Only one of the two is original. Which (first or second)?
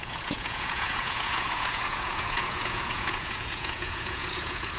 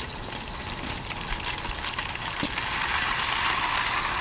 second